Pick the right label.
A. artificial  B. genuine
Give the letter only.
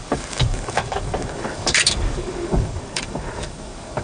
A